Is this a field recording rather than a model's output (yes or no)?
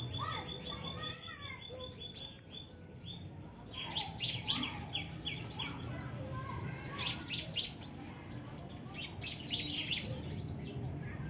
yes